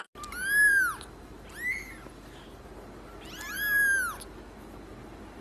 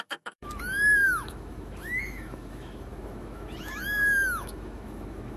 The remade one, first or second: second